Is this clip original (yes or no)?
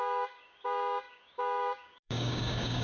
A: no